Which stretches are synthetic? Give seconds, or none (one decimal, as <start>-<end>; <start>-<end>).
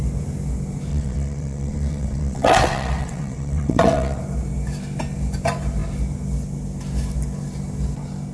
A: 0.9-4.2